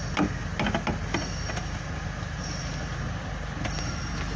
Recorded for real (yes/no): yes